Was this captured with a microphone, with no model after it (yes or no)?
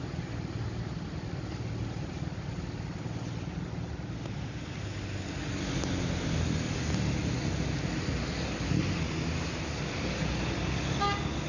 yes